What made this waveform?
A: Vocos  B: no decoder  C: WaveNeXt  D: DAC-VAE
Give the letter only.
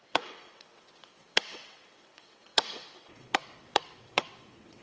C